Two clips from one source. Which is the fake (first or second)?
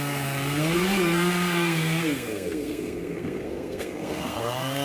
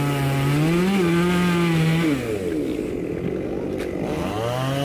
first